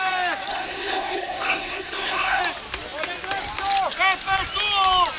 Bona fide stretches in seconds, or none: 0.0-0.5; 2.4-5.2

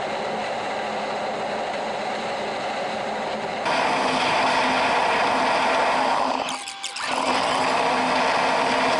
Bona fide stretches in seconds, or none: 0.0-9.0

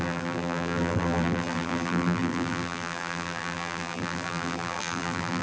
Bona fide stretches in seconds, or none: none

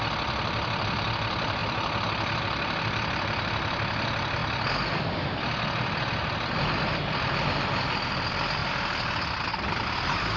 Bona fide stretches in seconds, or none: 1.6-2.4; 4.4-6.8; 8.6-9.5

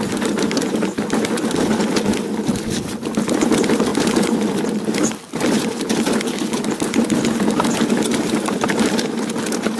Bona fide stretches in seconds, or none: 0.0-9.8

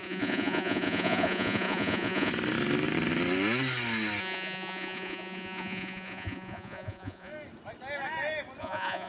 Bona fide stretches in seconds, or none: 2.3-4.2; 7.3-8.6

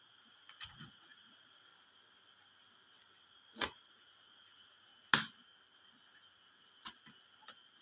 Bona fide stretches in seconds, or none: 1.7-3.2; 4.9-7.8